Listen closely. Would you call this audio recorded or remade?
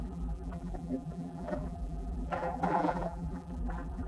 remade